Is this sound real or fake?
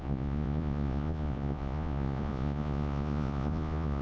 fake